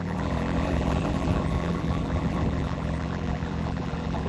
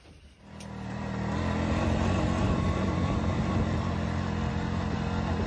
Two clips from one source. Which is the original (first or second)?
second